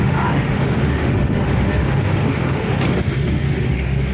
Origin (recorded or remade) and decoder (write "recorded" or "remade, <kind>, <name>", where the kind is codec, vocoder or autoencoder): remade, autoencoder, DAC-VAE